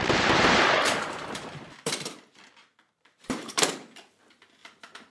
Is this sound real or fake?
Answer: fake